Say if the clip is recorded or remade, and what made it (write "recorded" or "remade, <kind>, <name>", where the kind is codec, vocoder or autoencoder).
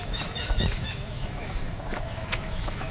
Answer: remade, autoencoder, DAC-VAE